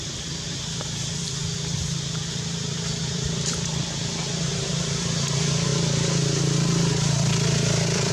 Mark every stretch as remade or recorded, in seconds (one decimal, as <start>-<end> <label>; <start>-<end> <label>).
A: 0.0-5.7 remade; 5.7-6.9 recorded; 6.9-8.1 remade